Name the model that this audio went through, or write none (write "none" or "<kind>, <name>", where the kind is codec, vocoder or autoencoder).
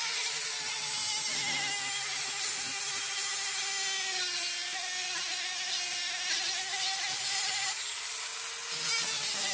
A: none